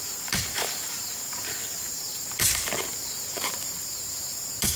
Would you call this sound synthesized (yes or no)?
yes